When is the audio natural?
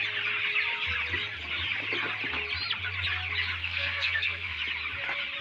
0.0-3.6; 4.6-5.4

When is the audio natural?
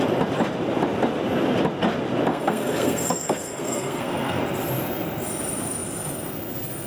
0.0-2.3; 4.4-6.9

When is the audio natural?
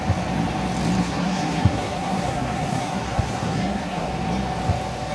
0.0-1.0; 4.1-5.1